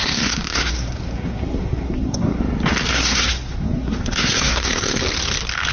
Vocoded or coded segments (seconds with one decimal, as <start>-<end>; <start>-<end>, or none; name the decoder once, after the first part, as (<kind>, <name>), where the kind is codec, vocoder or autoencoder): 0.0-2.4 (codec, SNAC); 2.9-5.0